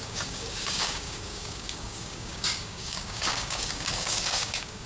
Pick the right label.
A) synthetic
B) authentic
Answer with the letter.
A